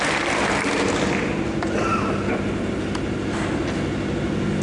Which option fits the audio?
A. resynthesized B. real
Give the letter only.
B